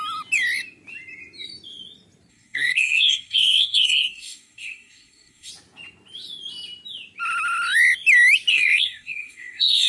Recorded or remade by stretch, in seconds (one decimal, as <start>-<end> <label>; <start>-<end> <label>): 0.0-2.3 recorded; 2.3-5.5 remade; 5.5-8.5 recorded; 8.5-9.9 remade